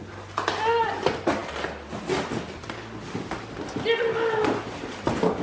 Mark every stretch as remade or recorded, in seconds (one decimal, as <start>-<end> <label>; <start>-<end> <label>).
0.0-5.4 recorded